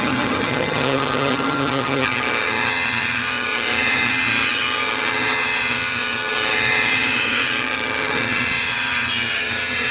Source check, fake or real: fake